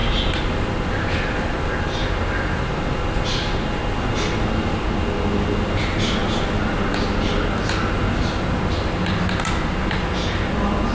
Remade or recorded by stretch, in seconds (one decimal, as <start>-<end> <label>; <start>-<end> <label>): 0.0-10.9 recorded